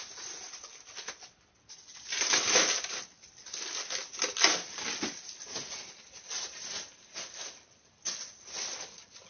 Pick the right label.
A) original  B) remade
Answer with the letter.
A